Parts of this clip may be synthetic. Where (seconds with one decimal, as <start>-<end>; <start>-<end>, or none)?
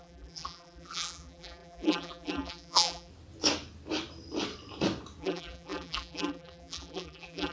0.0-3.1; 5.2-7.5